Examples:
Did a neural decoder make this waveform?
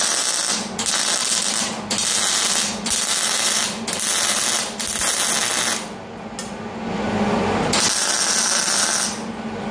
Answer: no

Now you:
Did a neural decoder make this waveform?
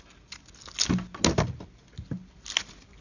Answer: no